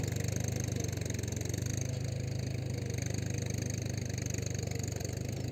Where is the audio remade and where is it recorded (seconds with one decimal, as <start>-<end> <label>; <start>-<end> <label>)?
0.0-5.5 recorded